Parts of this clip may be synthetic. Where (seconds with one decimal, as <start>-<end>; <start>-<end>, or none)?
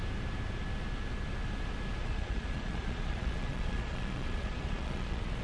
2.0-5.4